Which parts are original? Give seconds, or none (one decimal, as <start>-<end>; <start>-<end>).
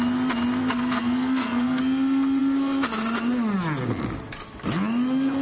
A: 0.0-0.6; 1.8-5.4